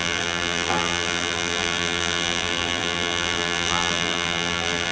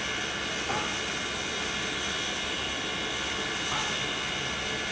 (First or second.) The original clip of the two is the second